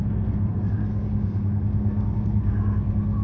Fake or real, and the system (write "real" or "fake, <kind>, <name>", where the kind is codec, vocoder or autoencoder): fake, codec, SNAC